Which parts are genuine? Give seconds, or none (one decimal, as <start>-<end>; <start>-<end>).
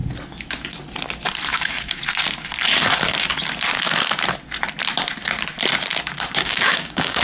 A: 0.0-1.5; 2.0-6.4